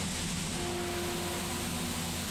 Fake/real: real